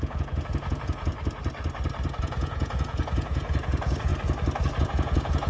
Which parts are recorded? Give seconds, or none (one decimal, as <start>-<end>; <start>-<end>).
1.1-2.2; 4.1-4.8